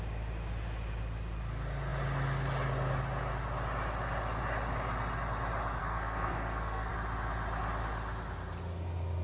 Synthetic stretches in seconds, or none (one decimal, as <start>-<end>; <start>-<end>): 5.8-6.9